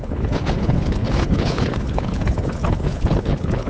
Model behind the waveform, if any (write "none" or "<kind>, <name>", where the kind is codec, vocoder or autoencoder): codec, HILCodec